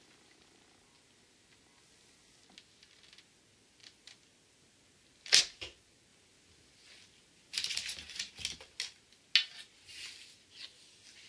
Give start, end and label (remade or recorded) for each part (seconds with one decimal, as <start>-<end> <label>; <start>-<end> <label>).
0.0-11.3 recorded